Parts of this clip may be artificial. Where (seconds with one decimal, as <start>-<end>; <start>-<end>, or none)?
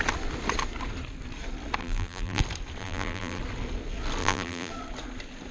1.8-2.4; 2.8-3.4; 4.2-4.7